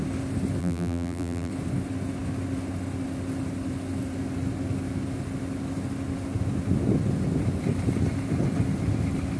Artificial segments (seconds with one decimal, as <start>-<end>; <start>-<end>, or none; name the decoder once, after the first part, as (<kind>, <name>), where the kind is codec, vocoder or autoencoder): 0.6-1.5 (vocoder, BigVGAN v2)